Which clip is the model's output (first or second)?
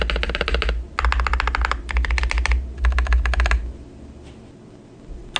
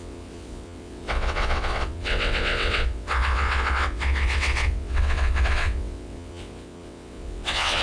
second